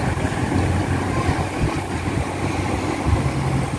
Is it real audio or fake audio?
real